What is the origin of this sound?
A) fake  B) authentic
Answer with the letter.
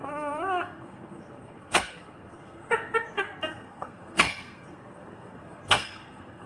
A